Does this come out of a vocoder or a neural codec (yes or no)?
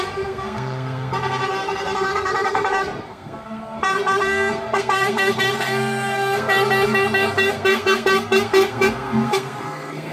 yes